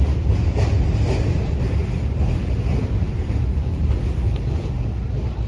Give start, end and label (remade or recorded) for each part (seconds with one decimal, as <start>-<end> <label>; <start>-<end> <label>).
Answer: 0.0-1.8 recorded; 1.8-2.6 remade; 2.6-3.5 recorded; 3.5-4.7 remade; 4.7-5.5 recorded